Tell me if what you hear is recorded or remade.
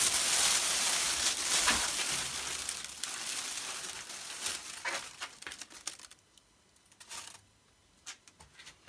recorded